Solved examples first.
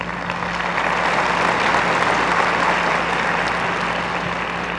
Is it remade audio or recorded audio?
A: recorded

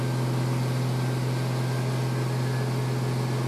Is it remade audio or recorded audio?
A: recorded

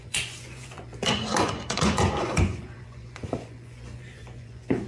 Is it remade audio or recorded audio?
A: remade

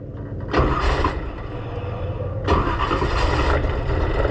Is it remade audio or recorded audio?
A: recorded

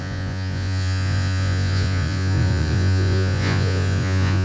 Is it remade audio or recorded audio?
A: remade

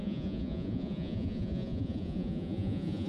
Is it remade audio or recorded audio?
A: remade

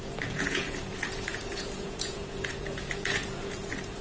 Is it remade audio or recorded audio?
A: remade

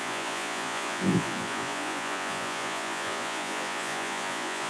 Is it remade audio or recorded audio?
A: remade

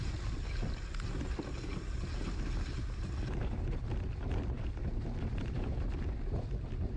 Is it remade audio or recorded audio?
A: recorded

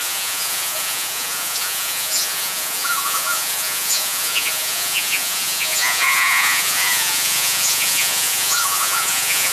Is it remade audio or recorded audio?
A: remade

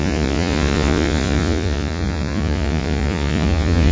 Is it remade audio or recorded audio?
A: remade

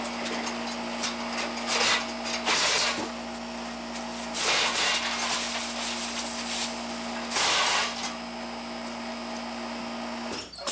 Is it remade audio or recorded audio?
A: recorded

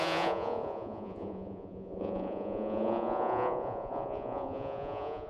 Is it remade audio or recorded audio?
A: remade